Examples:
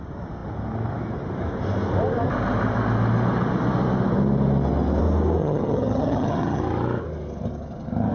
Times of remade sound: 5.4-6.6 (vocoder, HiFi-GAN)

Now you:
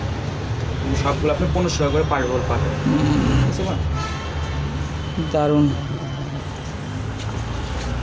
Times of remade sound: 5.8-6.4 (vocoder, HiFi-GAN)

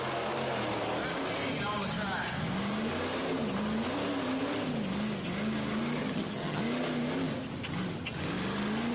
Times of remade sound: 6.0-6.6 (vocoder, HiFi-GAN)

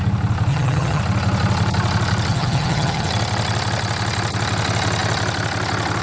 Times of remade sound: 0.5-1.0 (vocoder, HiFi-GAN); 2.3-3.1